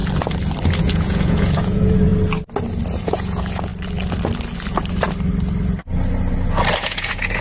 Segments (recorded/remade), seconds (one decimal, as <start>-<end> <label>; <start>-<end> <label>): 0.0-0.8 recorded; 0.8-2.1 remade; 2.1-3.0 recorded; 3.0-3.7 remade; 3.7-6.8 recorded; 6.8-7.4 remade